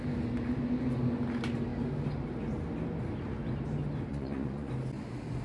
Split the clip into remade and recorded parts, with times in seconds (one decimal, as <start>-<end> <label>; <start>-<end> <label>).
0.0-4.1 recorded; 4.1-4.7 remade; 4.7-5.4 recorded